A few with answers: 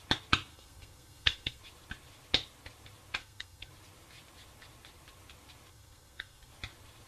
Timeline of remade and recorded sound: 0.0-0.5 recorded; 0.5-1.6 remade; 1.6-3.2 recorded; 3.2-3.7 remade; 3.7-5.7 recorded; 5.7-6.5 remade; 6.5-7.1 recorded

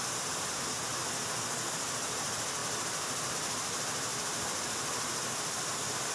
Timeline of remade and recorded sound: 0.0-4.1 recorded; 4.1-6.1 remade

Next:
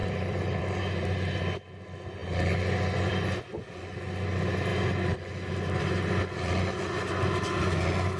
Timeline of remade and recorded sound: 0.0-0.6 remade; 0.6-8.2 recorded

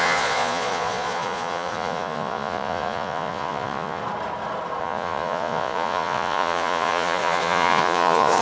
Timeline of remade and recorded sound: 0.0-4.0 remade; 4.0-4.8 recorded; 4.8-8.4 remade